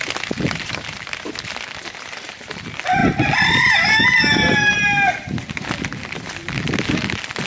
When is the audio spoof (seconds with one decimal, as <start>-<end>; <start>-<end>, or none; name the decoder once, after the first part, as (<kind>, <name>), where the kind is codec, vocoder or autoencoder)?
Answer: none